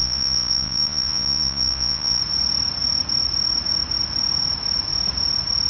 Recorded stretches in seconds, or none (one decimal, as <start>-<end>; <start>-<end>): 2.2-5.7